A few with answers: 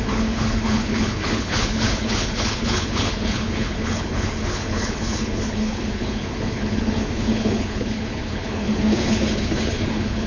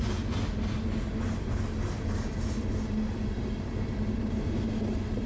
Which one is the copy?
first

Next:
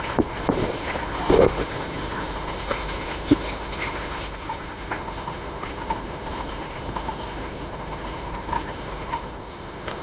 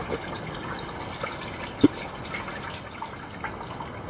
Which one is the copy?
first